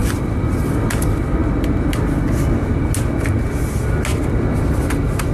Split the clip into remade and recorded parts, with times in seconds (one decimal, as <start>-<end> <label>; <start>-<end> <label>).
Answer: 0.0-0.8 remade; 0.8-4.1 recorded; 4.1-5.3 remade